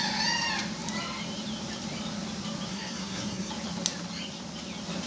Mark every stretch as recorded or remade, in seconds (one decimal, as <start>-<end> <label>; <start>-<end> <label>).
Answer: 0.0-2.7 recorded; 2.7-3.5 remade; 3.5-5.1 recorded